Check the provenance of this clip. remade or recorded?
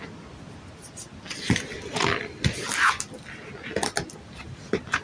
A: recorded